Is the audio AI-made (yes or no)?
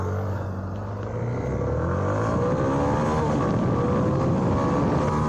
no